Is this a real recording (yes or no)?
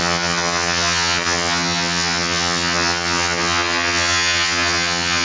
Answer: no